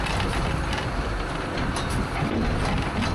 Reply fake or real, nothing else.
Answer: real